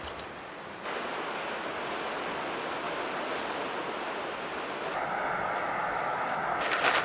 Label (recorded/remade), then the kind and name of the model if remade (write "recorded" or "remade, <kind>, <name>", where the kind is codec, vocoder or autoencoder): recorded